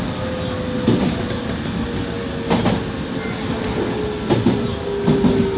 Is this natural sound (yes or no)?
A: yes